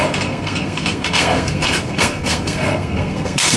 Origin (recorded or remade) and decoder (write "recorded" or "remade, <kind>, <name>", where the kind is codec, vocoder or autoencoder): remade, codec, SNAC